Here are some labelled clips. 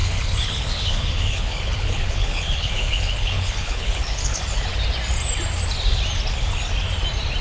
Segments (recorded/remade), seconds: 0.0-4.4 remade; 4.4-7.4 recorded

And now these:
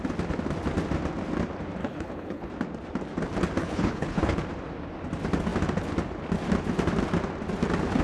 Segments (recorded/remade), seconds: 0.0-1.8 recorded; 1.8-2.5 remade; 2.5-3.6 recorded; 3.6-4.4 remade; 4.4-8.0 recorded

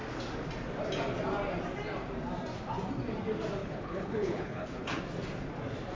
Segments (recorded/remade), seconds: 0.0-3.6 recorded; 3.6-5.0 remade; 5.0-5.9 recorded